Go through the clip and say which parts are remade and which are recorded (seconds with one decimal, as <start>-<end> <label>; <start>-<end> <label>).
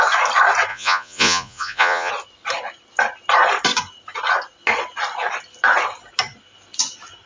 0.0-0.7 recorded; 0.7-2.1 remade; 2.1-7.3 recorded